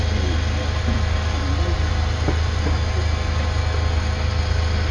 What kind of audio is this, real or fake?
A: real